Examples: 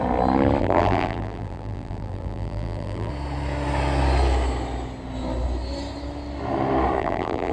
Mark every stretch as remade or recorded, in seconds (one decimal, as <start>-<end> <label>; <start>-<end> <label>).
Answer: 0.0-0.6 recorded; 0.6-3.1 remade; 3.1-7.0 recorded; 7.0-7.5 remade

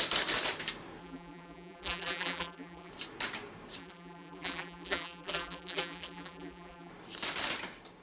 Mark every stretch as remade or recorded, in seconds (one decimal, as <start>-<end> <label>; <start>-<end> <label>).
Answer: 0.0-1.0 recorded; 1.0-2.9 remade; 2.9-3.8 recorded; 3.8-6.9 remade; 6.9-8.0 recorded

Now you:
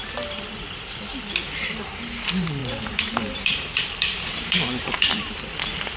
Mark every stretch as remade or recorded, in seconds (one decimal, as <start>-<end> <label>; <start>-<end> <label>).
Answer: 0.0-2.6 recorded; 2.6-5.3 remade; 5.3-6.0 recorded